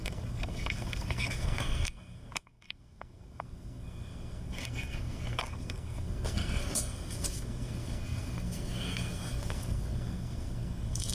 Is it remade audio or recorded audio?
remade